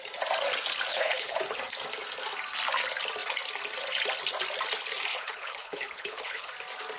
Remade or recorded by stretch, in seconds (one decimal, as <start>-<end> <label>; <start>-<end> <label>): 0.0-0.9 recorded; 0.9-1.4 remade; 1.4-5.1 recorded; 5.1-6.5 remade; 6.5-7.0 recorded